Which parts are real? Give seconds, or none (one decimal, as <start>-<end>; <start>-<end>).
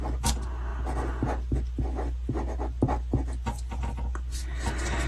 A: 0.0-5.1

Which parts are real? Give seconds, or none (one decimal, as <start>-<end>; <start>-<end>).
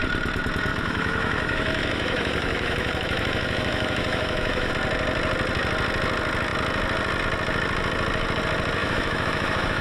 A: 0.0-0.7; 4.7-8.8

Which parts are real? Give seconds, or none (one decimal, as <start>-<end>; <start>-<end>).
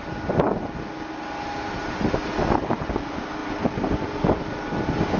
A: 0.0-5.2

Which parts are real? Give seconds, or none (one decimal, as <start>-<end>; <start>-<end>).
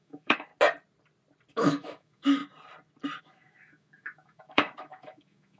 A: 0.5-1.5; 2.4-3.2